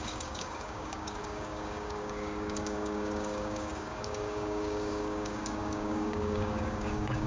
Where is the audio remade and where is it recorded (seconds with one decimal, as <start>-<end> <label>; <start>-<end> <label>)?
0.0-7.3 remade